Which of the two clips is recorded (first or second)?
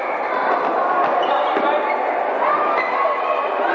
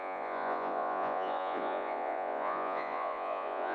first